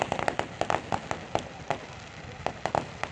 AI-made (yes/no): no